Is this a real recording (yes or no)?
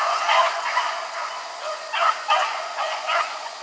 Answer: no